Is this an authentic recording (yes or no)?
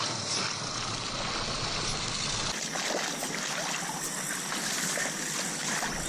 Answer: yes